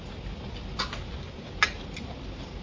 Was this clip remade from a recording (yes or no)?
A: no